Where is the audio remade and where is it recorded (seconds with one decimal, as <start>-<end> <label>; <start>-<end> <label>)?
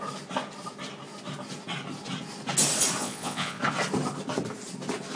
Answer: 0.0-3.0 recorded; 3.0-3.6 remade; 3.6-5.2 recorded